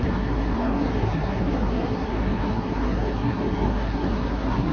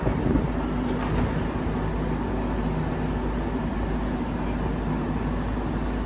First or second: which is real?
second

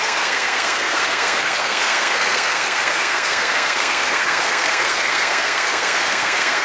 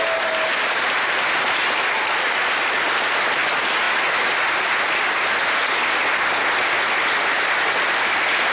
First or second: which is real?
second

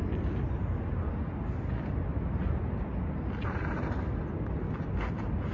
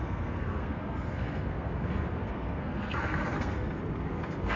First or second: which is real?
first